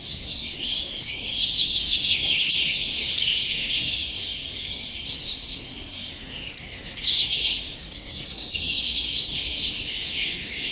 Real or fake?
fake